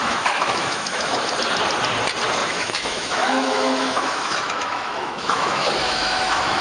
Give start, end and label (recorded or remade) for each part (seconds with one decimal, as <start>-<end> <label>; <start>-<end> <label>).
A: 0.0-1.3 remade; 1.3-2.4 recorded; 2.4-6.6 remade